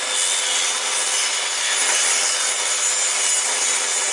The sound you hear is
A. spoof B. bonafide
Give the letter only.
B